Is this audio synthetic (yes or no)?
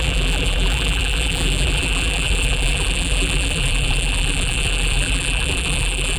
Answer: yes